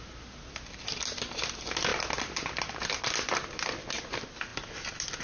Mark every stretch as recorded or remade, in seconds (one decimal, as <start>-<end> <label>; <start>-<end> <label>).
0.0-5.2 recorded